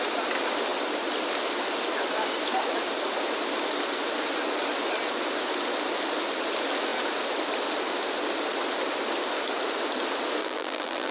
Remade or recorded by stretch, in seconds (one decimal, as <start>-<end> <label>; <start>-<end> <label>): 0.0-10.4 recorded; 10.4-11.1 remade